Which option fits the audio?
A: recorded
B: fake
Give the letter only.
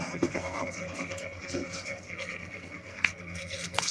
B